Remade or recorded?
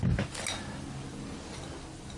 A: recorded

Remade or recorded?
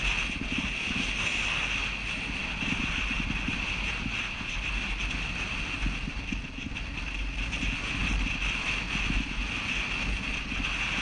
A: recorded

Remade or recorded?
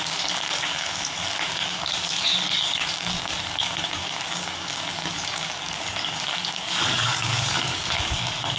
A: remade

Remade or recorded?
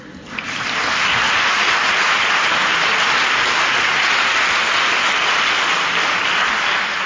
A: recorded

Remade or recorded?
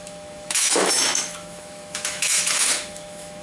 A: remade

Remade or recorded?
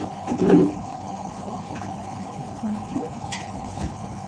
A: remade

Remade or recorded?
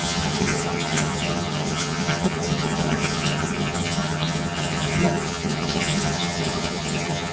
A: remade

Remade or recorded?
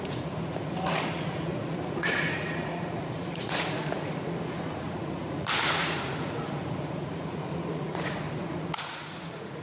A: remade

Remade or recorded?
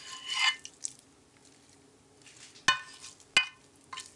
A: recorded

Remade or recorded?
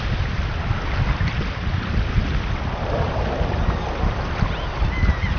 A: recorded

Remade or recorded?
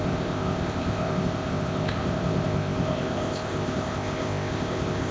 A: remade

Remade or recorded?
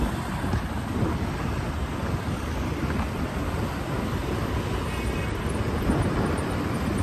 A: recorded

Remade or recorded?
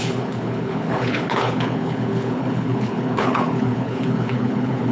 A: remade